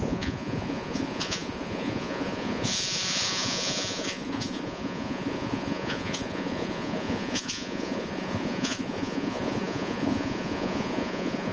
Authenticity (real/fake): fake